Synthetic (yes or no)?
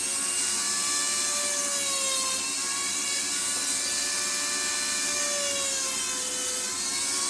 no